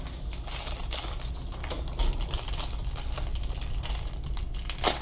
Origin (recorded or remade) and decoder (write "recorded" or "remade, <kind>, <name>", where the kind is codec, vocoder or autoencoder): recorded